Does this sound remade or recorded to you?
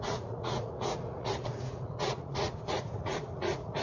remade